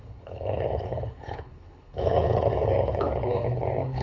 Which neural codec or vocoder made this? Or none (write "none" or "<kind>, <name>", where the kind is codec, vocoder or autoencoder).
codec, HILCodec